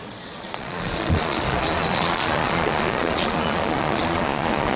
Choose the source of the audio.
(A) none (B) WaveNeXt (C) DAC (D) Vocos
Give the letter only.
D